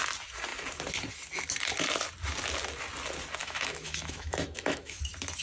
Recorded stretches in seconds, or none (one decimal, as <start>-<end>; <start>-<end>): 0.0-3.4; 5.0-5.4